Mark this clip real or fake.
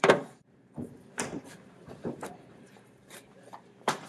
fake